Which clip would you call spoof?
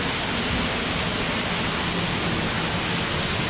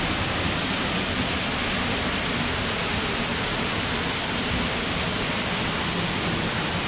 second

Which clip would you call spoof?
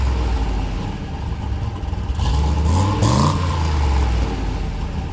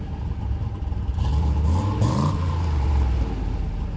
second